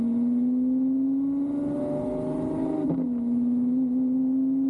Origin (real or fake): real